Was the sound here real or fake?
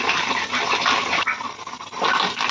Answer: real